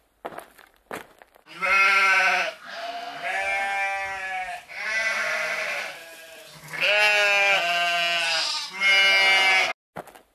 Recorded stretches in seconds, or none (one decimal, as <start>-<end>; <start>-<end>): 0.0-10.3